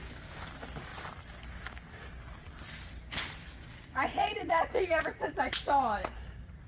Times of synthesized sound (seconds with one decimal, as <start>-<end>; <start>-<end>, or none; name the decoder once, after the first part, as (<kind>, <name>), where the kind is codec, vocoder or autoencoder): 3.5-5.0 (vocoder, Vocos)